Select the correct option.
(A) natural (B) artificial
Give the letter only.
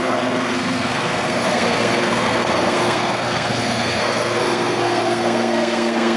B